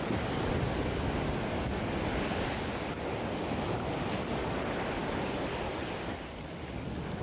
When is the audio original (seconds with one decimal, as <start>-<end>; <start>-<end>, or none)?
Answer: 0.0-7.2